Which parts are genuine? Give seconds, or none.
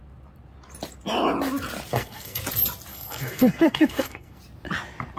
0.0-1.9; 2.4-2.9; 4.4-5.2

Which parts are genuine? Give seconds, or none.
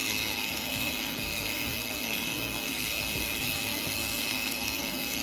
none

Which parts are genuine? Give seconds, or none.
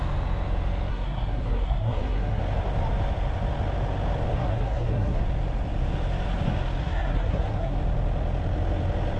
0.0-0.9; 2.4-4.3; 5.2-6.8; 7.8-9.2